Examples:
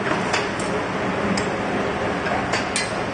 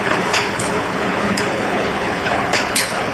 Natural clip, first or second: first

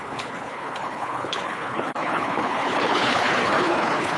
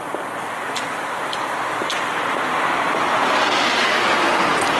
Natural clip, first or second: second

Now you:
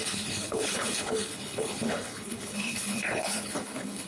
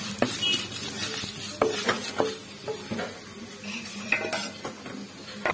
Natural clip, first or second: second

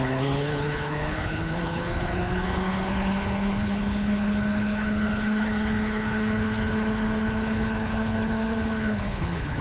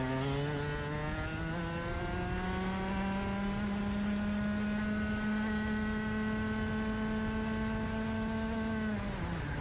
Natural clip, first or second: second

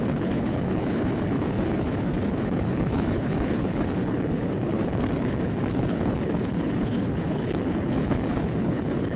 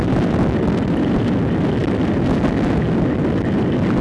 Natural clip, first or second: second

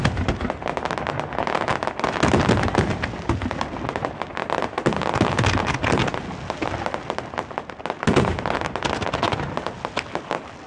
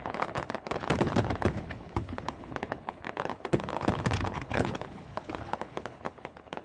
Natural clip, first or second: first